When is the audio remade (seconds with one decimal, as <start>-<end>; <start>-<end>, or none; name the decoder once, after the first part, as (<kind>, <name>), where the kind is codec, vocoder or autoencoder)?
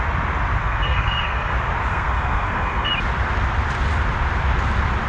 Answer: 0.6-1.5 (codec, SNAC); 1.9-2.9